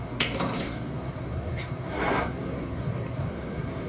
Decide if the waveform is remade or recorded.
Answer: remade